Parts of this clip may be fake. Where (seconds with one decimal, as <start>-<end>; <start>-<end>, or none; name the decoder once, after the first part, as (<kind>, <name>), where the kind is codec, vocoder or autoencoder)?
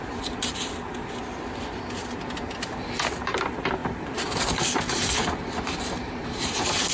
3.8-6.9 (vocoder, BigVGAN v2)